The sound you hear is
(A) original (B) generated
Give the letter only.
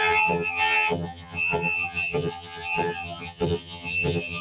B